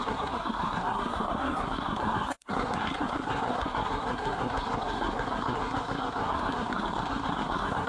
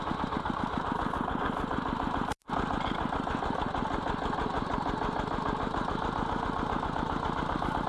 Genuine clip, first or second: second